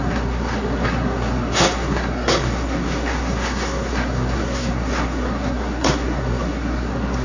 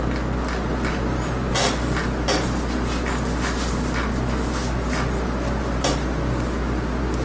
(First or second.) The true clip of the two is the second